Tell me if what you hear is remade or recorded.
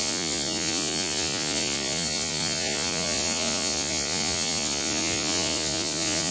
remade